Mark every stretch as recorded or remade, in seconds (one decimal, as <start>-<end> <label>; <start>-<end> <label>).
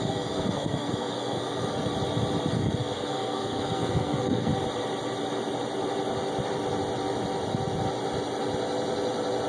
0.0-1.9 remade; 1.9-2.5 recorded; 2.5-4.5 remade; 4.5-9.5 recorded